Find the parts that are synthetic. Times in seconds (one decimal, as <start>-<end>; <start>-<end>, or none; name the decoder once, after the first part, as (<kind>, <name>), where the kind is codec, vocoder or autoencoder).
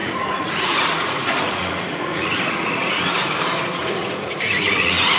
0.0-3.1 (vocoder, Vocos); 3.8-5.2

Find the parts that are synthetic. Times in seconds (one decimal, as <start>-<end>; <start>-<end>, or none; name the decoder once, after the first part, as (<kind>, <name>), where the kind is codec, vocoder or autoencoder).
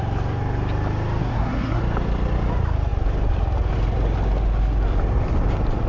1.2-1.8 (codec, SNAC)